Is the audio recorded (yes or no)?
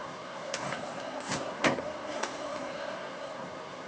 no